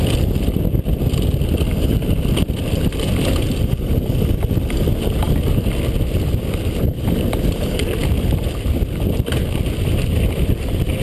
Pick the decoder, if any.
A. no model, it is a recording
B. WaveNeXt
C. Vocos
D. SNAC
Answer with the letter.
A